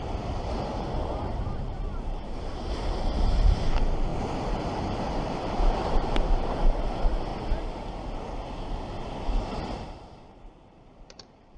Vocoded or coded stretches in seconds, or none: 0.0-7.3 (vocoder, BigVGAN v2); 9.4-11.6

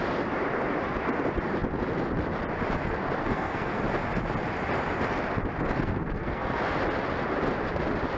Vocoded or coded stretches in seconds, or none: 3.2-3.8 (codec, SNAC); 5.7-6.6